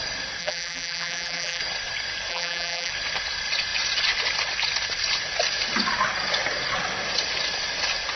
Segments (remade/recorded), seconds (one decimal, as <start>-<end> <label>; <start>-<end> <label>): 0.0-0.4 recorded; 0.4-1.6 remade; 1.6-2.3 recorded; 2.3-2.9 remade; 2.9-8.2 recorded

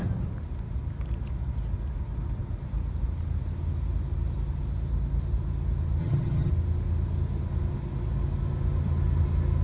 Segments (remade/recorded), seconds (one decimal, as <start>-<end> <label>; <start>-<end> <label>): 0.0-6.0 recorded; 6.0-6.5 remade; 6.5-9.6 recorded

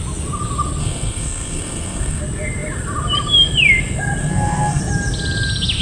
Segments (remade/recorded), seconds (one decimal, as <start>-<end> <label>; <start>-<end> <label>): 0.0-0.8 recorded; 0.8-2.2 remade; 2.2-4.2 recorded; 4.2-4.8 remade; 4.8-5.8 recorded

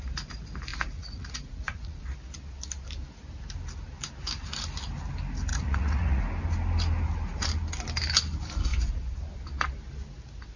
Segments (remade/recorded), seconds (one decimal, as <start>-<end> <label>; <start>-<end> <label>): 0.0-0.7 recorded; 0.7-2.0 remade; 2.0-5.5 recorded; 5.5-6.2 remade; 6.2-10.6 recorded

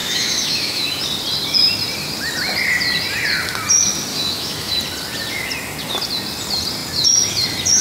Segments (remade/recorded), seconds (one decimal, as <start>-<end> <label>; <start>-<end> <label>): 0.0-1.0 remade; 1.0-4.1 recorded; 4.1-4.7 remade; 4.7-7.8 recorded

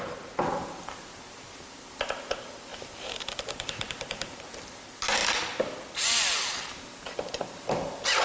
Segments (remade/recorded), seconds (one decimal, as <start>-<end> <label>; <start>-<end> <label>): 0.0-2.7 recorded; 2.7-4.4 remade; 4.4-8.2 recorded

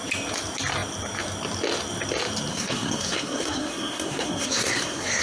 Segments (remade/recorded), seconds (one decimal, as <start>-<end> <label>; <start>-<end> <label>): 0.0-2.5 recorded; 2.5-5.2 remade

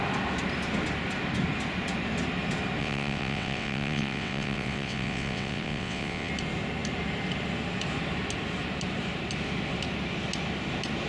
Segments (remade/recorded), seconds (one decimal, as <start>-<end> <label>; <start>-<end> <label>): 0.0-2.8 recorded; 2.8-6.3 remade; 6.3-11.1 recorded